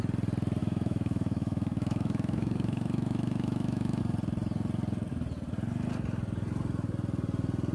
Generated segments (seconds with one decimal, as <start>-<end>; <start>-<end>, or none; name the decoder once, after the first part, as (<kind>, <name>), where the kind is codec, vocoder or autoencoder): 0.6-4.0 (autoencoder, DAC-VAE)